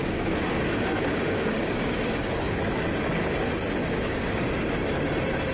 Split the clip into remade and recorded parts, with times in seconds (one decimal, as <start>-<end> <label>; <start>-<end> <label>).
0.0-2.6 remade; 2.6-3.8 recorded; 3.8-4.4 remade; 4.4-5.5 recorded